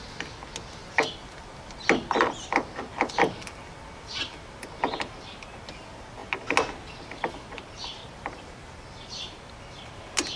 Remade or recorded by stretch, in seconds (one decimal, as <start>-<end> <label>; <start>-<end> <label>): 0.0-10.4 recorded